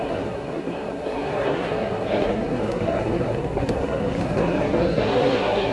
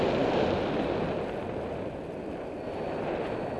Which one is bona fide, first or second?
second